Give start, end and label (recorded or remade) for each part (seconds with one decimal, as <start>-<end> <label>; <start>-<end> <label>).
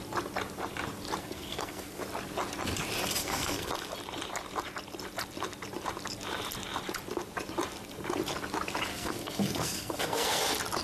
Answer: 0.0-1.2 recorded; 1.2-2.0 remade; 2.0-3.2 recorded; 3.2-3.7 remade; 3.7-8.9 recorded; 8.9-10.4 remade; 10.4-10.8 recorded